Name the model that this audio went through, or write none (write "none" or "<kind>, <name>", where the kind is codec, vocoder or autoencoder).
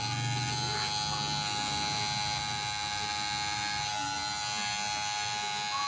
none